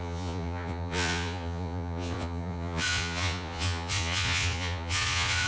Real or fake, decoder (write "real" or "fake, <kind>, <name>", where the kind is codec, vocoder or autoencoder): fake, vocoder, Vocos